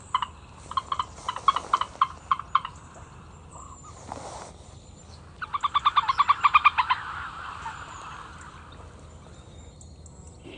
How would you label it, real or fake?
real